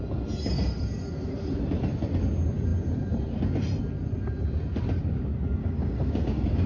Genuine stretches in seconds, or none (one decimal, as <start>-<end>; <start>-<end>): 0.0-5.6